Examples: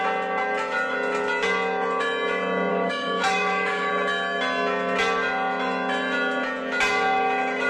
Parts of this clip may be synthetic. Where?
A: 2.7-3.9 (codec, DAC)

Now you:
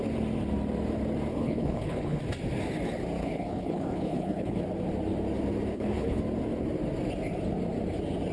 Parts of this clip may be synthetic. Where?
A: 1.3-2.2 (codec, HILCodec); 3.2-4.6; 5.7-6.2

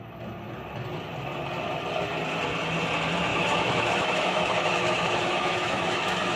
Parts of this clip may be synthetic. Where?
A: 3.3-6.4 (autoencoder, DAC-VAE)

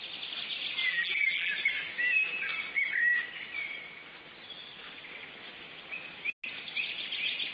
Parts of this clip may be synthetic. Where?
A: 0.9-1.5 (vocoder, BigVGAN v2)

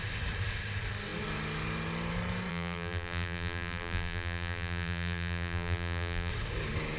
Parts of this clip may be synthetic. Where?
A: 2.5-6.3 (vocoder, BigVGAN v2)